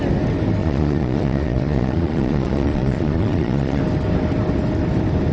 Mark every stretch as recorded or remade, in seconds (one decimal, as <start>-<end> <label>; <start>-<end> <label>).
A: 0.0-0.6 recorded; 0.6-3.8 remade; 3.8-5.3 recorded